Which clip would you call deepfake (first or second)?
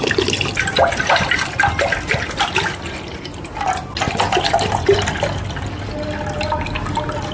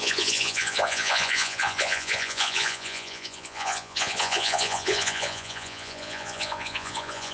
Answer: second